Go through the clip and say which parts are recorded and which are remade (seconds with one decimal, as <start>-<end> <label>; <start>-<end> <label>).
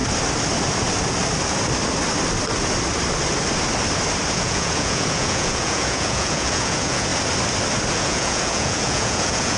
0.0-4.3 recorded; 4.3-7.1 remade; 7.1-7.9 recorded; 7.9-9.6 remade